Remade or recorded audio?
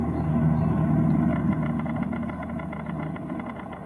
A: recorded